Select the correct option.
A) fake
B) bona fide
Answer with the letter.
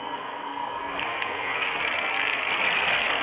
A